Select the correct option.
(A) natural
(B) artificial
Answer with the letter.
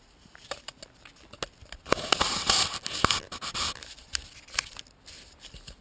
A